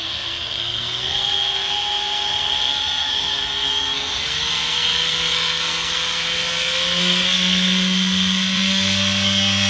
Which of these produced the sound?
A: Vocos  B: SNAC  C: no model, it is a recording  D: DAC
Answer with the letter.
B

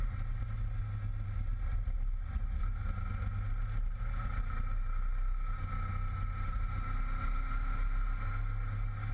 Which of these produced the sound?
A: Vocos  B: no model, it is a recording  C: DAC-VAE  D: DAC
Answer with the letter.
B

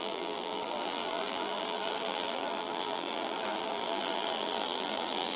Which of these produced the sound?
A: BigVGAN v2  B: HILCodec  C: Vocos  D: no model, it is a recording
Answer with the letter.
A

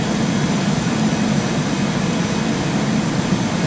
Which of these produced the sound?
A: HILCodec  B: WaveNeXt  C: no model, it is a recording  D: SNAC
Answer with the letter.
C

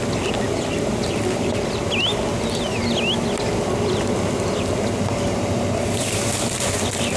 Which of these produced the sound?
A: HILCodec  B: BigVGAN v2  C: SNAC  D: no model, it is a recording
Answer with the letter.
D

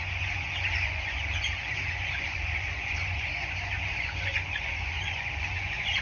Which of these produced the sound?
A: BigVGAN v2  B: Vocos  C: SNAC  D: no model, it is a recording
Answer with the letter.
B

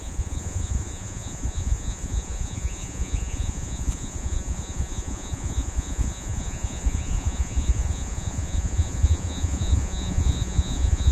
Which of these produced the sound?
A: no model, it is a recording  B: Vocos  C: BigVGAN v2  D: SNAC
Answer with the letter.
B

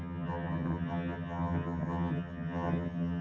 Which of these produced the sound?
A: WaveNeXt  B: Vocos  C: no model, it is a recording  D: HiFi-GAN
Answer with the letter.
D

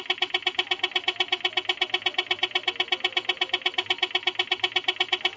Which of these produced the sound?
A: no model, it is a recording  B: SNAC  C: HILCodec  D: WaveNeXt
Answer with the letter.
A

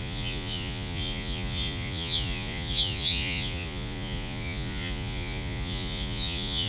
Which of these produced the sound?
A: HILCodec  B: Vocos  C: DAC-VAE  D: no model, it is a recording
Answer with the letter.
B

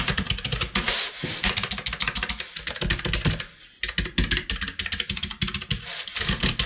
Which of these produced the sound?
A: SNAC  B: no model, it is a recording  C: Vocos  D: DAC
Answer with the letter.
B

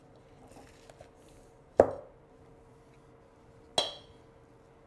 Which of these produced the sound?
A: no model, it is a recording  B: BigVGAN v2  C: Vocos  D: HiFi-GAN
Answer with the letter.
A